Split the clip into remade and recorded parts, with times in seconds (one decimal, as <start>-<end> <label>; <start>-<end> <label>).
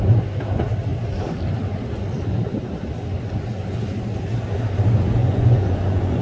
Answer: 0.0-5.2 recorded; 5.2-6.2 remade